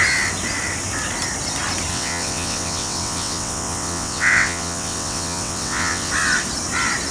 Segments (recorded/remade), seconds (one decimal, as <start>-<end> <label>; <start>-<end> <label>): 0.0-1.9 recorded; 1.9-6.1 remade; 6.1-7.1 recorded